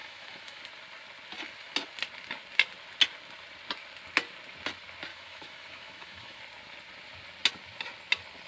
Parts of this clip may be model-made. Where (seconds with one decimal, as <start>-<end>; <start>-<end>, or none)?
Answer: 0.0-0.6; 5.1-6.4